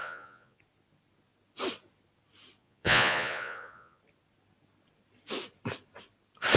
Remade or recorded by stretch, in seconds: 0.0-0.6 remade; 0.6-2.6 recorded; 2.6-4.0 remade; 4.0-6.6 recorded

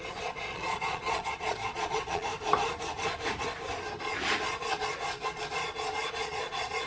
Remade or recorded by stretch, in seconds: 0.0-2.3 remade; 2.3-6.1 recorded; 6.1-6.9 remade

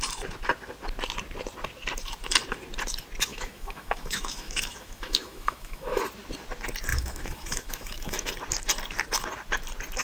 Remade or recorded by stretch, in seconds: 0.0-3.3 recorded; 3.3-6.0 remade; 6.0-6.9 recorded; 6.9-8.3 remade; 8.3-10.0 recorded

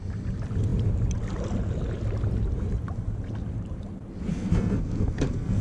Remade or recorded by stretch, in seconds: 0.0-4.3 recorded; 4.3-5.6 remade

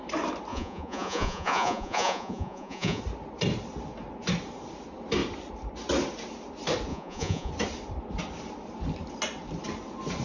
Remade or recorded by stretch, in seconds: 0.0-0.5 recorded; 0.5-3.0 remade; 3.0-6.9 recorded; 6.9-7.5 remade; 7.5-10.2 recorded

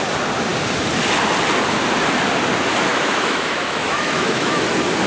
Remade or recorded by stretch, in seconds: 0.0-2.9 recorded; 2.9-4.6 remade; 4.6-5.1 recorded